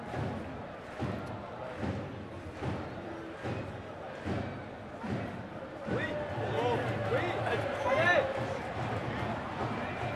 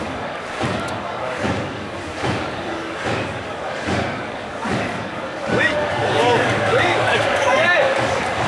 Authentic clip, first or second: first